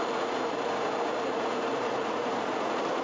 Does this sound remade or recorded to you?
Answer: remade